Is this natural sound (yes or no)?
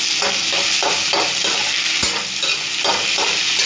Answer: yes